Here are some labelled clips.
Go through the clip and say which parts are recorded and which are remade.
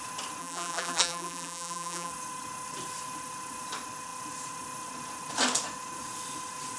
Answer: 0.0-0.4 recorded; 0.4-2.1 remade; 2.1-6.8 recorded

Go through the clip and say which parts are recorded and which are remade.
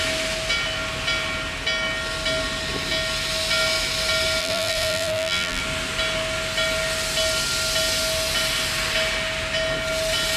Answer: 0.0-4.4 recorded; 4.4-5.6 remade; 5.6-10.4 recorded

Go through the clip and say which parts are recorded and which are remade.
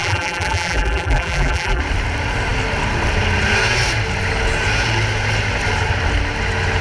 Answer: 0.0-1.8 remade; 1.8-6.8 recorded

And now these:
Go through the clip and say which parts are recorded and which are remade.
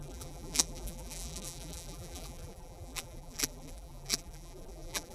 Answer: 0.0-5.1 remade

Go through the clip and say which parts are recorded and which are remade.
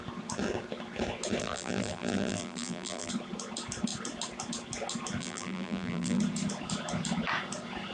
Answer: 0.0-1.4 recorded; 1.4-3.1 remade; 3.1-5.2 recorded; 5.2-6.2 remade; 6.2-7.9 recorded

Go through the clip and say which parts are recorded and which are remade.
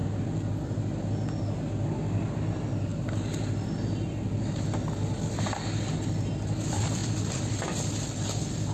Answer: 0.0-2.9 recorded; 2.9-6.3 remade; 6.3-7.0 recorded; 7.0-8.0 remade; 8.0-8.7 recorded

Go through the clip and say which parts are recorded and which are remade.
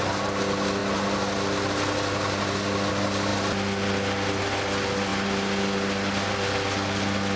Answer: 0.0-7.4 recorded